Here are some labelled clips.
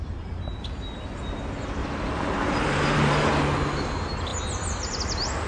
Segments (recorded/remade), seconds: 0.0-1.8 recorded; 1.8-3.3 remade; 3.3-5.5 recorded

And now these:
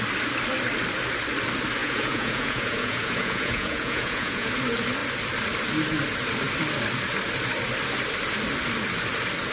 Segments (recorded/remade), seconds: 0.0-1.8 recorded; 1.8-4.5 remade; 4.5-9.5 recorded

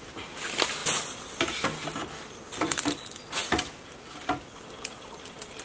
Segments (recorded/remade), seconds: 0.0-5.6 recorded

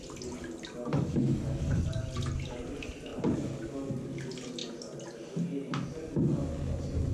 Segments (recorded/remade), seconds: 0.0-0.9 recorded; 0.9-1.8 remade; 1.8-7.1 recorded

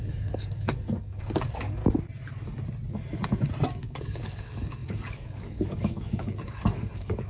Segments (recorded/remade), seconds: 0.0-1.8 remade; 1.8-3.8 recorded; 3.8-7.3 remade

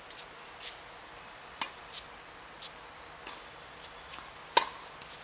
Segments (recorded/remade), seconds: 0.0-5.2 recorded

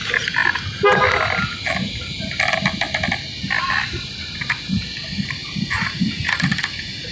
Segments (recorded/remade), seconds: 0.0-5.4 recorded; 5.4-7.1 remade